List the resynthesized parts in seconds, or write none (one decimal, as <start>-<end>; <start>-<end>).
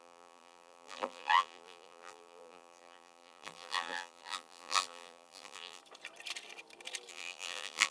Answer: 0.0-5.8; 7.1-7.9